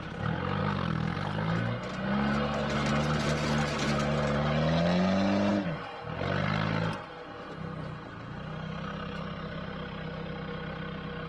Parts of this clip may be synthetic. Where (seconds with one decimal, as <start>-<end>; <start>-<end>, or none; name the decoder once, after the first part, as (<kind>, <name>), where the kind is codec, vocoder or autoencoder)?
none